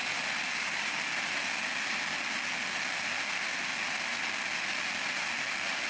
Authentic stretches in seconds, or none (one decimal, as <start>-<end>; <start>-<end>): 0.0-5.9